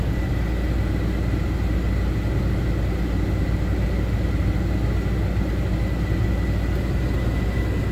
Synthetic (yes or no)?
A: no